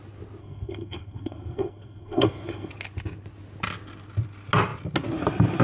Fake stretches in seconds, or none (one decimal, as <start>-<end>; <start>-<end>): 0.4-2.7